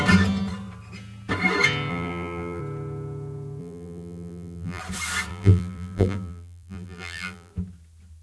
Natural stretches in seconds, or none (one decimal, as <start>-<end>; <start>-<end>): 0.0-1.9; 2.6-3.6; 4.8-5.3; 7.5-8.2